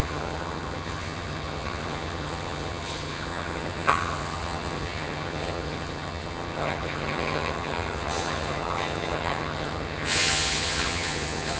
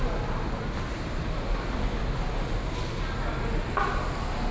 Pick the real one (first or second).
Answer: second